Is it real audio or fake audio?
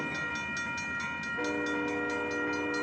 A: real